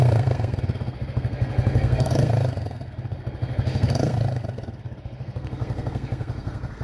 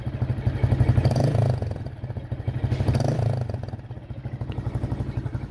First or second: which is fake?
first